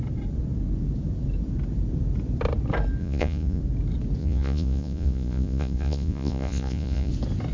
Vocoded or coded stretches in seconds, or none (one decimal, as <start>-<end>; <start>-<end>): 3.0-3.6; 4.2-7.1